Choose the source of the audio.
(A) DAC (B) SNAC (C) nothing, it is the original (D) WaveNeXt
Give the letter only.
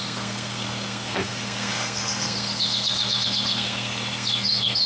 B